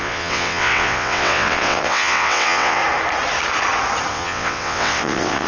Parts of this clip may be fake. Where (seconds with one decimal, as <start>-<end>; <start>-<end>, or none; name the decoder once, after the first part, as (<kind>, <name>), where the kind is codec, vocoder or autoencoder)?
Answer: 0.0-2.8 (vocoder, WaveNeXt); 4.1-5.5